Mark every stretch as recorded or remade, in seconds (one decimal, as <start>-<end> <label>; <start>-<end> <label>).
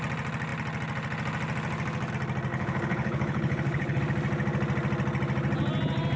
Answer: 0.0-2.5 recorded; 2.5-4.0 remade; 4.0-6.2 recorded